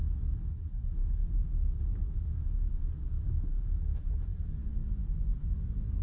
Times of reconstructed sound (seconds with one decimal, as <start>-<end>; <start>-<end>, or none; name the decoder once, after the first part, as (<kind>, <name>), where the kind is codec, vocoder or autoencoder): 1.4-4.2 (codec, DAC)